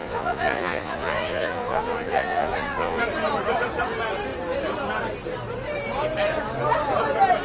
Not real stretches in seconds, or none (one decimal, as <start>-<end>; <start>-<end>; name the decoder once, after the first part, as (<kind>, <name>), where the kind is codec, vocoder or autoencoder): 0.0-3.0 (vocoder, Vocos)